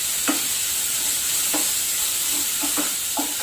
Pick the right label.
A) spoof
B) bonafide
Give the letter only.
B